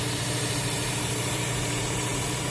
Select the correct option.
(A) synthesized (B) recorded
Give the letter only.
A